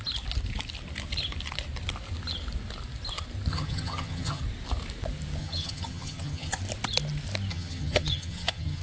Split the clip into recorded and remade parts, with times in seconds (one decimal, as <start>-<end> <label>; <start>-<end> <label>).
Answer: 0.0-3.5 recorded; 3.5-4.4 remade; 4.4-5.4 recorded; 5.4-6.6 remade; 6.6-7.5 recorded; 7.5-8.8 remade